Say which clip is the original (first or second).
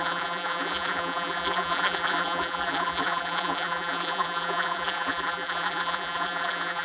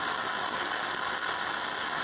second